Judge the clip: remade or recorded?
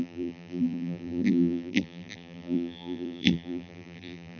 remade